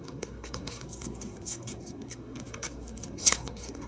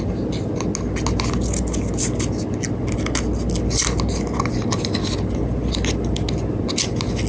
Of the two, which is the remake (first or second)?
first